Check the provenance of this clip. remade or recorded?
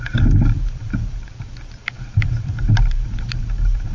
remade